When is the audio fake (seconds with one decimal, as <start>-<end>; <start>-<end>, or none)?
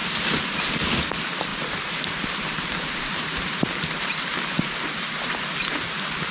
1.5-5.3